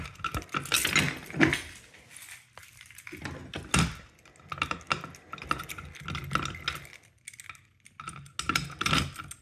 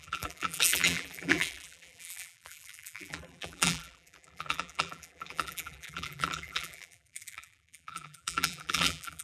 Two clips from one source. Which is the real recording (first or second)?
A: first